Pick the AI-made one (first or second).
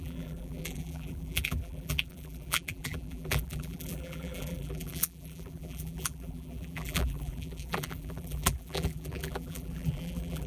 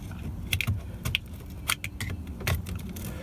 first